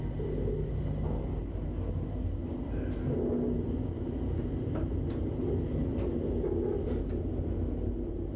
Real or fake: real